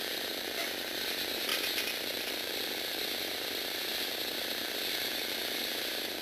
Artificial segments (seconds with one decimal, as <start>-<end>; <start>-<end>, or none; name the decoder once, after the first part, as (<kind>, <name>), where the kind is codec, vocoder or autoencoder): 0.0-1.5 (vocoder, BigVGAN v2); 2.7-6.2